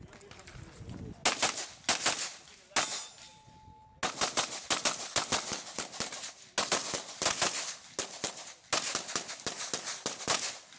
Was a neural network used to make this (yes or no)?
no